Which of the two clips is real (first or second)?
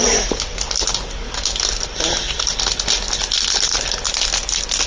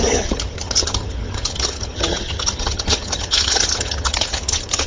first